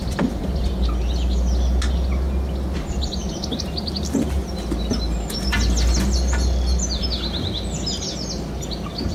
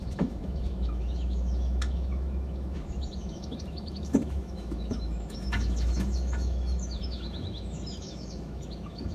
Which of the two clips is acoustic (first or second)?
first